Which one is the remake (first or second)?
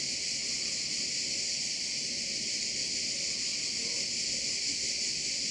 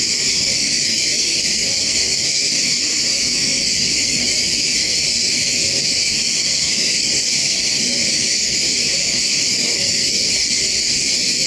second